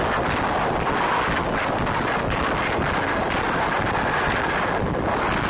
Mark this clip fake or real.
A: real